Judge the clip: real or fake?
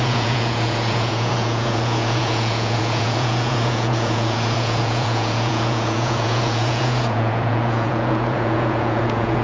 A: fake